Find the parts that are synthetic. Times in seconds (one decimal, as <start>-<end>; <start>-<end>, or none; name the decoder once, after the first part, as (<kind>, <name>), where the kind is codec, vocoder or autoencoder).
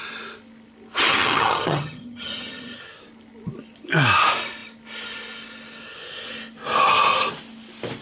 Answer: 1.1-2.8 (vocoder, HiFi-GAN)